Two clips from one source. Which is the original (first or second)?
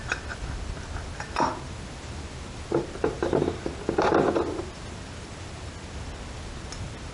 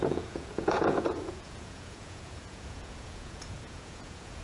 first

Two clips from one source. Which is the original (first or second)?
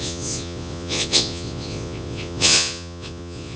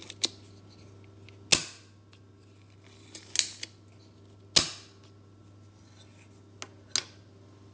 second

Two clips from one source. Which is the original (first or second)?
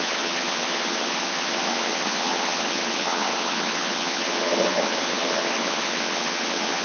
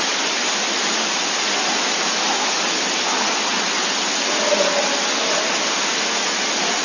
second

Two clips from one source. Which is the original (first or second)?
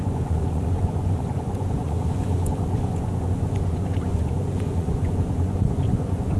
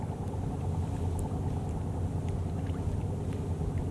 second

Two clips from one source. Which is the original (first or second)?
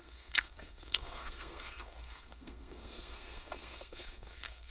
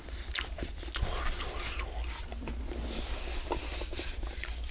second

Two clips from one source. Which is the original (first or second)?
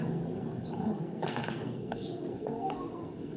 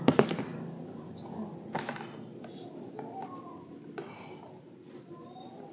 second